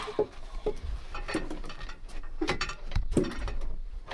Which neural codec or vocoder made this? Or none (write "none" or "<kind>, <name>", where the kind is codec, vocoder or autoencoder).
vocoder, BigVGAN v2